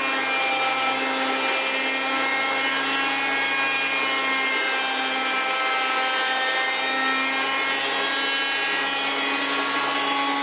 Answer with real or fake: real